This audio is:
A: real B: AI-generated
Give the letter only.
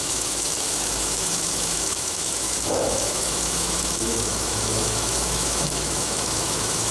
B